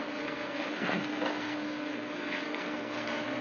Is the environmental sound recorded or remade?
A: remade